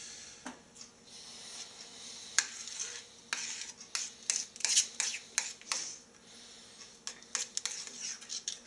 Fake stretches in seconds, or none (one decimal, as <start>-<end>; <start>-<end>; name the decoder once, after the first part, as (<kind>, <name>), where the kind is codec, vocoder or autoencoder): none